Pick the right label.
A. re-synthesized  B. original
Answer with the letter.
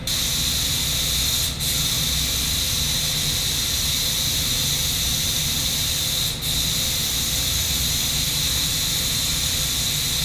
B